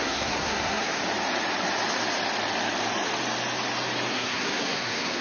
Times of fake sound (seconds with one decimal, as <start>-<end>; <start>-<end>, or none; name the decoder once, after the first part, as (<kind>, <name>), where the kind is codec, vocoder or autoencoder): 0.0-1.0 (codec, SNAC); 4.1-5.2